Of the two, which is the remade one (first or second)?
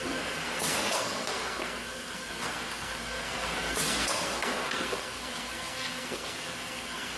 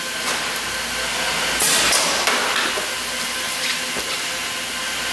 first